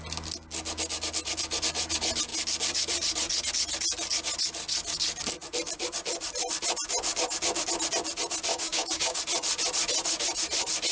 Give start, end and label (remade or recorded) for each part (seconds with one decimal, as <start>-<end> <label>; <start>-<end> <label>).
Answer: 0.0-8.5 recorded; 8.5-9.2 remade; 9.2-10.9 recorded